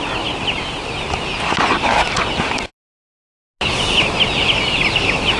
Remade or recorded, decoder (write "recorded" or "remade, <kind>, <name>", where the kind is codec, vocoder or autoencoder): recorded